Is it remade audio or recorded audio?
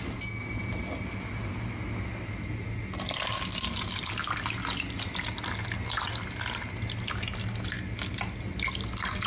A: recorded